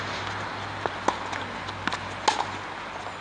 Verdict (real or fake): real